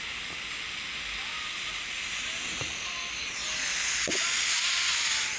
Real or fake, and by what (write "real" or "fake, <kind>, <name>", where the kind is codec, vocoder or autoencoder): real